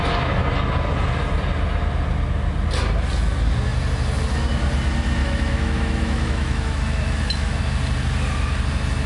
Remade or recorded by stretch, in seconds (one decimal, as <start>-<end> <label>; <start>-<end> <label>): 0.0-5.2 recorded; 5.2-7.6 remade; 7.6-9.1 recorded